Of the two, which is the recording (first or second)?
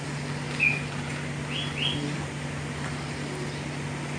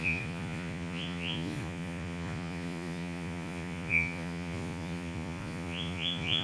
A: first